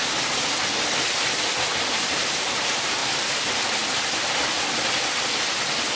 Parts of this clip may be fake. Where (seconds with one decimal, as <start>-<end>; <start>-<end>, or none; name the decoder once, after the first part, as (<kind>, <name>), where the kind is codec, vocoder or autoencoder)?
1.7-2.4 (vocoder, BigVGAN v2); 3.0-4.6